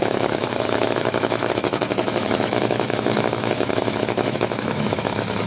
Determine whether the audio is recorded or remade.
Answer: remade